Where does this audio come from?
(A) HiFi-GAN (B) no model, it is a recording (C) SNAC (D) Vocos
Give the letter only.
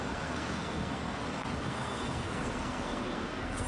C